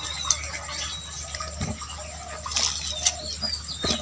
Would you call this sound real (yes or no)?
yes